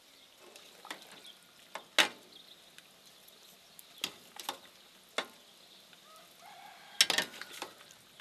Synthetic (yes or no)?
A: no